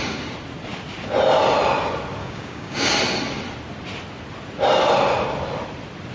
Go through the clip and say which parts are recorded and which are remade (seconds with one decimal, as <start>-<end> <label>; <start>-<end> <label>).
0.0-2.2 recorded; 2.2-2.9 remade; 2.9-6.1 recorded